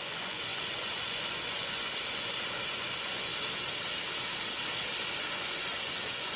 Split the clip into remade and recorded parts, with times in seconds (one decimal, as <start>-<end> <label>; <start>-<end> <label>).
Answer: 0.0-3.3 remade; 3.3-5.0 recorded; 5.0-6.4 remade